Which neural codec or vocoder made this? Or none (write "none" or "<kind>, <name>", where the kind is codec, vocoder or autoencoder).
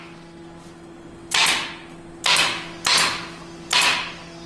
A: none